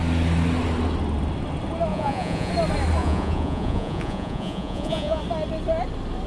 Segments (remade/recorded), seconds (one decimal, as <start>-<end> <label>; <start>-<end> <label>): 0.0-1.9 recorded; 1.9-2.5 remade; 2.5-3.0 recorded; 3.0-5.2 remade; 5.2-6.3 recorded